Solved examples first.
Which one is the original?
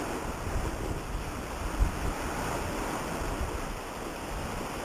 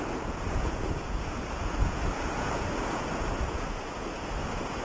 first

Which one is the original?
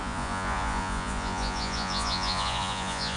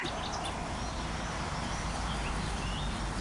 second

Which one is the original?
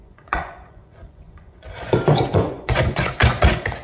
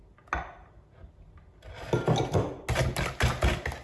second